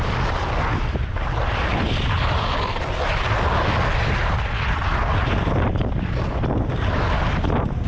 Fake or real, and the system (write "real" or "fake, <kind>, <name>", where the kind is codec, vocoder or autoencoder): real